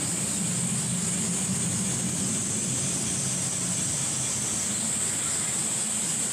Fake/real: real